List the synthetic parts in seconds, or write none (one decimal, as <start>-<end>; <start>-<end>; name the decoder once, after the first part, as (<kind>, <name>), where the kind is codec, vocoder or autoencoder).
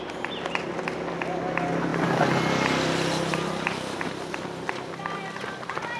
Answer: none